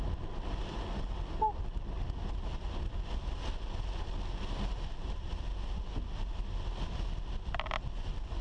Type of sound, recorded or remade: recorded